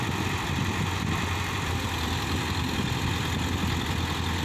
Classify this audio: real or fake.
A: fake